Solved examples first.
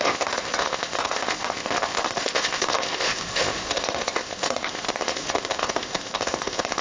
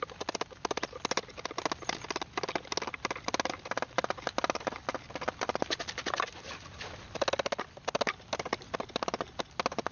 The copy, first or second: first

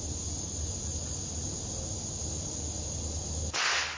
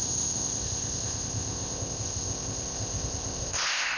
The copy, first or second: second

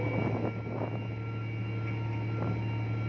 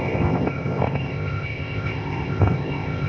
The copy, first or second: second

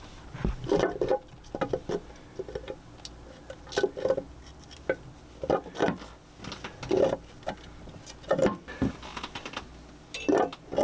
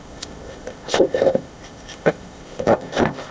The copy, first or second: second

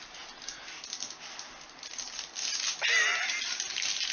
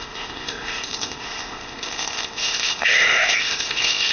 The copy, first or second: second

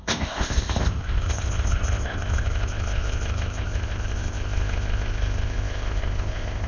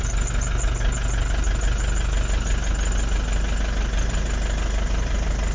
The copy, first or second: first